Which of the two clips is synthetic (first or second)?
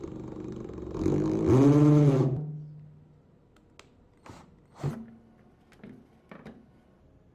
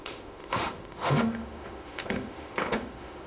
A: second